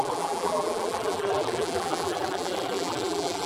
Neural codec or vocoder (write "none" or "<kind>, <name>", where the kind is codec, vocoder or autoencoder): vocoder, BigVGAN v2